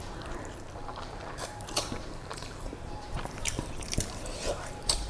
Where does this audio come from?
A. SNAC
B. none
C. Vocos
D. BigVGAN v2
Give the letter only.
D